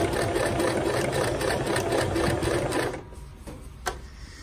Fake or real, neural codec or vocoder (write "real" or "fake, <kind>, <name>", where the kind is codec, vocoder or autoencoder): real